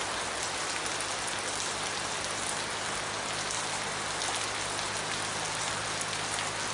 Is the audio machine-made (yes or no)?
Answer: no